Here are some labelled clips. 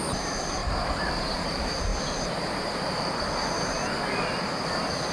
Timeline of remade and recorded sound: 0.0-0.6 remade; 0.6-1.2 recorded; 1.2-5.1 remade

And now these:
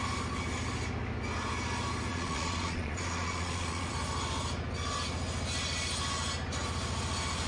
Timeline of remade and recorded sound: 0.0-2.1 recorded; 2.1-3.9 remade; 3.9-7.5 recorded

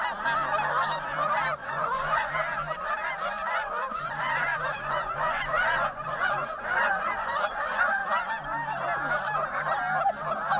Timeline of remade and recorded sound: 0.0-1.6 recorded; 1.6-2.3 remade; 2.3-3.5 recorded; 3.5-8.0 remade; 8.0-10.6 recorded